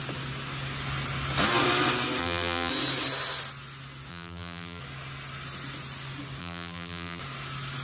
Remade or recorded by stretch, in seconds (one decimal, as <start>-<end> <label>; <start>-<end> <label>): 0.0-2.2 recorded; 2.2-2.7 remade; 2.7-4.1 recorded; 4.1-4.8 remade; 4.8-6.4 recorded; 6.4-7.2 remade; 7.2-7.8 recorded